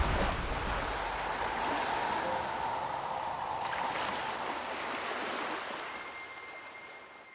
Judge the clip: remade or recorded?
recorded